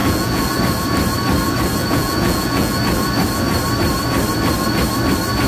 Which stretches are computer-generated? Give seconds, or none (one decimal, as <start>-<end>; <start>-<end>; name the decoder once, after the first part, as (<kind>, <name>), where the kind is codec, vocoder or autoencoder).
0.0-0.6 (vocoder, Vocos); 1.8-2.8